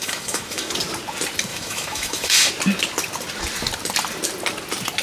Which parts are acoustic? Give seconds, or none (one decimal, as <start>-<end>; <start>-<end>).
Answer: 0.7-1.5; 2.5-5.0